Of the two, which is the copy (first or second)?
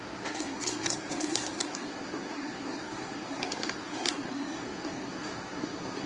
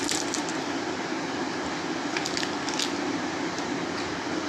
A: first